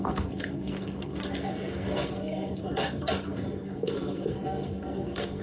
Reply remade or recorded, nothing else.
remade